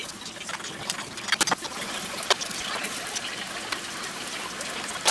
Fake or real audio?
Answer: real